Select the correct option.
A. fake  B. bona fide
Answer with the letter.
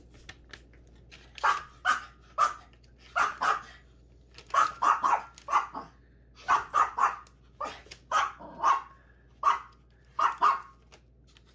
B